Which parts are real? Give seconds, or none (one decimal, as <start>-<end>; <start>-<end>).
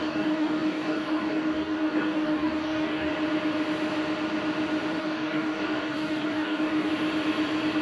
3.1-5.0; 6.9-7.8